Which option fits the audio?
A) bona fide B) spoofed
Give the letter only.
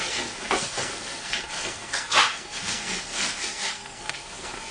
B